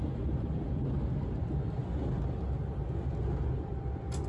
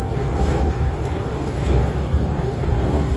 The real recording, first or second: first